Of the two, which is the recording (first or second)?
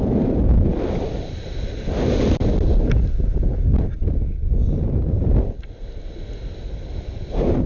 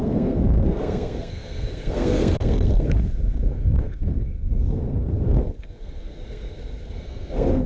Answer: first